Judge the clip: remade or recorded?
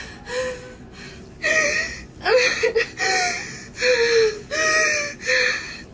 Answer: recorded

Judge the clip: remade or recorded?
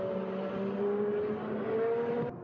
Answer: recorded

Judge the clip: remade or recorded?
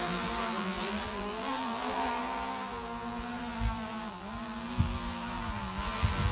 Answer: remade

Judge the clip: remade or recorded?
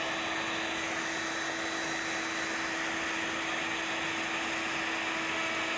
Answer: recorded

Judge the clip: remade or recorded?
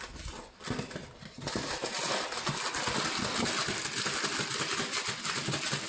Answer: recorded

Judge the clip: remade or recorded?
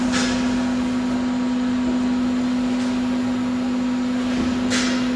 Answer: recorded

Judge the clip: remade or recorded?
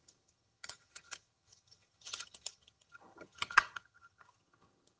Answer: remade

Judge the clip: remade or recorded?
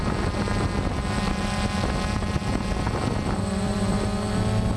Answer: recorded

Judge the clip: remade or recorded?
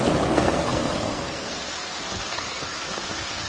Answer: remade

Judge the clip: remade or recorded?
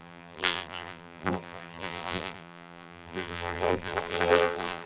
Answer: remade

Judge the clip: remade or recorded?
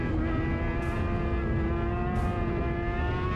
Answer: recorded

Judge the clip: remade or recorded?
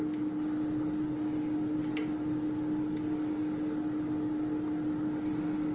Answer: recorded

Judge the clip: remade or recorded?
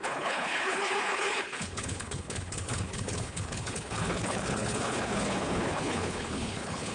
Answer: remade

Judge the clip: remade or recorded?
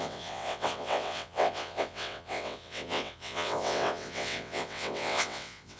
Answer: remade